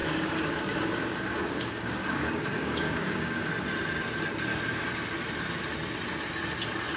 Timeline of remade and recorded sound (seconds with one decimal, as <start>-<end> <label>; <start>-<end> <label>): 0.0-3.5 remade; 3.5-7.0 recorded

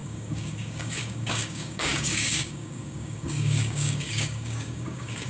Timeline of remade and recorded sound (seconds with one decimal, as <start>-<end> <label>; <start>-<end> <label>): 0.0-5.3 remade

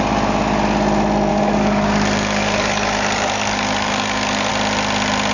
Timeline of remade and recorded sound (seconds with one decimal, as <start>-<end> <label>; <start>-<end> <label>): 0.0-1.3 recorded; 1.3-4.5 remade; 4.5-5.3 recorded

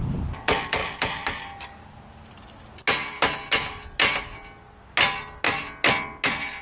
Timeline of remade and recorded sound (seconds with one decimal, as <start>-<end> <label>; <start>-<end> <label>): 0.0-6.6 recorded

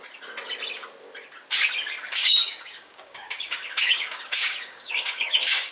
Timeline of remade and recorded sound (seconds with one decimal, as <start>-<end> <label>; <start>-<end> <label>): 0.0-2.0 recorded; 2.0-5.7 remade

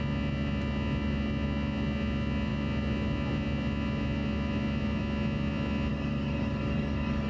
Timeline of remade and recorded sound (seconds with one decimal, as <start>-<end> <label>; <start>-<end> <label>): 0.0-5.9 recorded; 5.9-7.3 remade

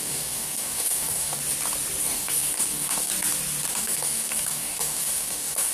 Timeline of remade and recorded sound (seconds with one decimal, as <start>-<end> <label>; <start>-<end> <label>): 0.0-1.4 remade; 1.4-2.0 recorded; 2.0-3.1 remade; 3.1-3.7 recorded; 3.7-5.7 remade